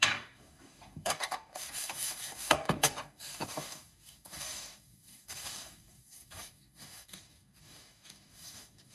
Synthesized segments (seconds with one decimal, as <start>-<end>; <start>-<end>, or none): 0.0-8.9